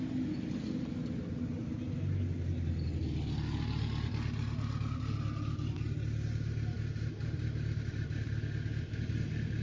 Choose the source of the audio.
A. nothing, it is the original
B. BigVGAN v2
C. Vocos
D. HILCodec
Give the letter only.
A